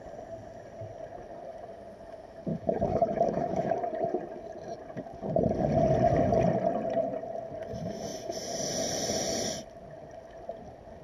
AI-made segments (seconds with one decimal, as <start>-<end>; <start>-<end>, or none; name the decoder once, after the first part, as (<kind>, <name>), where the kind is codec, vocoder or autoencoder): 2.5-3.7 (autoencoder, DAC-VAE)